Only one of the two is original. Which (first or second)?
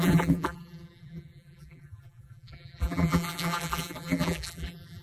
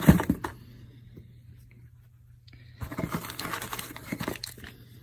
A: second